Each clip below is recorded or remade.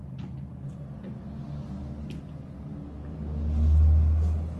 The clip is recorded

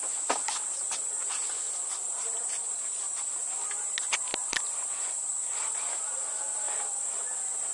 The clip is recorded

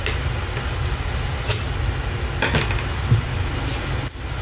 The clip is recorded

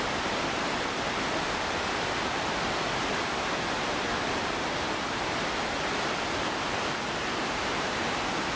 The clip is recorded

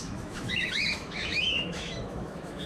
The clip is remade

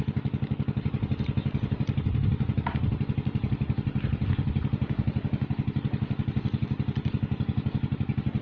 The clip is recorded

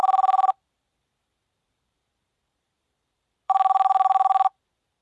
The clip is remade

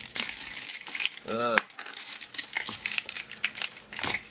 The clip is remade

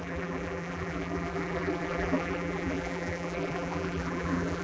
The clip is remade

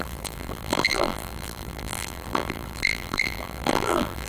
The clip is remade